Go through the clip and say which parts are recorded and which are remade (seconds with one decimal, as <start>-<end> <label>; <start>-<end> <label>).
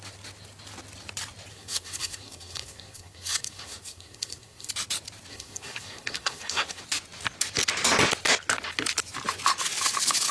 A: 0.0-1.5 recorded; 1.5-4.7 remade; 4.7-5.3 recorded; 5.3-6.8 remade; 6.8-10.3 recorded